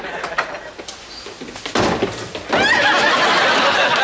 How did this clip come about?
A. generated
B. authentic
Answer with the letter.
B